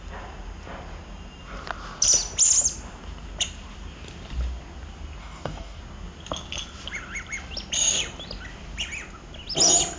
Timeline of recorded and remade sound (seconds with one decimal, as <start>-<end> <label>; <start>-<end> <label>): 0.0-5.2 recorded; 5.2-5.8 remade; 5.8-10.0 recorded